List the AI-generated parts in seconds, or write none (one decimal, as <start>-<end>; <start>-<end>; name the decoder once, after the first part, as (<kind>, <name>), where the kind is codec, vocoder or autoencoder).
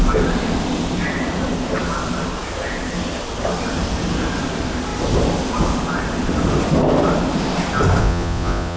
8.0-8.8 (vocoder, Vocos)